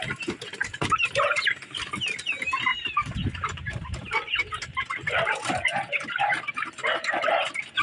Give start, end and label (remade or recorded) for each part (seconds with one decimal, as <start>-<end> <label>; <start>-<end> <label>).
0.0-0.6 recorded; 0.6-1.4 remade; 1.4-2.7 recorded; 2.7-7.2 remade; 7.2-7.8 recorded